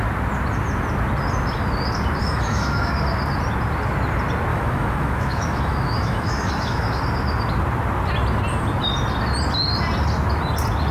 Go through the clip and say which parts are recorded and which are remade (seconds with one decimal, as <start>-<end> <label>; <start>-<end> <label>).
0.0-2.2 recorded; 2.2-2.9 remade; 2.9-4.5 recorded; 4.5-7.0 remade; 7.0-10.9 recorded